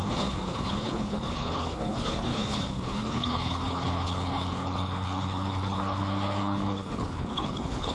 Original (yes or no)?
no